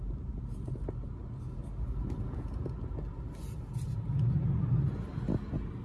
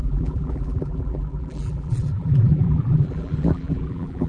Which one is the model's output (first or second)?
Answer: second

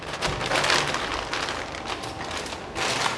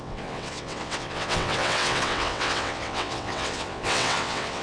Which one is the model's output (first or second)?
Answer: second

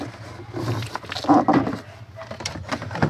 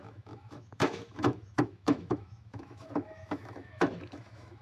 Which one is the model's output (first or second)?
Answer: second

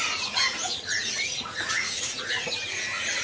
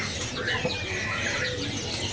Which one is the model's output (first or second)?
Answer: first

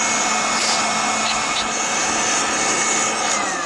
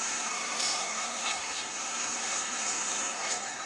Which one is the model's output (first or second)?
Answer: second